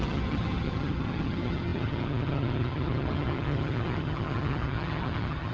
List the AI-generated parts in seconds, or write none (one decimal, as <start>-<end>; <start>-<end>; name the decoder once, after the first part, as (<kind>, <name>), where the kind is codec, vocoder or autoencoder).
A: 0.0-5.5 (vocoder, HiFi-GAN)

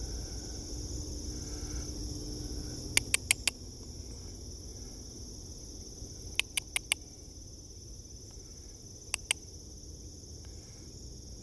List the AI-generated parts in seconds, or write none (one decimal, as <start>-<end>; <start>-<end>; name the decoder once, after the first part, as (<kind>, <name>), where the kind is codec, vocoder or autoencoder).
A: none

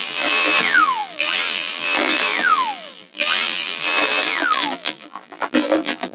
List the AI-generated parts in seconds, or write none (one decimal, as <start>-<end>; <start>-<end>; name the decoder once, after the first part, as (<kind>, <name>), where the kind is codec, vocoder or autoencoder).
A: 0.0-6.1 (vocoder, BigVGAN v2)

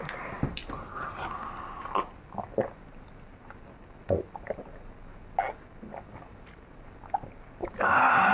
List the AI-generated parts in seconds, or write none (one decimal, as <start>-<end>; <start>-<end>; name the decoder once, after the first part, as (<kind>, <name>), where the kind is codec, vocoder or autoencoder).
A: none

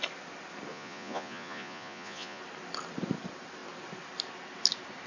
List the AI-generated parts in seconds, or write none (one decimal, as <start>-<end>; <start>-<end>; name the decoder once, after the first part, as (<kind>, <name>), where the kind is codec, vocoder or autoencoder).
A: 0.7-2.4 (vocoder, Vocos)